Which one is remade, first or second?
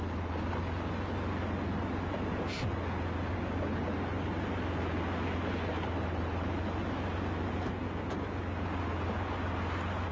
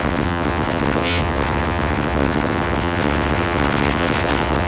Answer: second